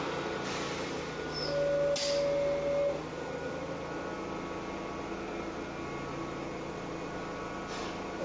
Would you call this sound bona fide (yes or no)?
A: yes